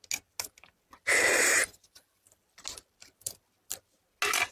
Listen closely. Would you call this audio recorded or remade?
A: recorded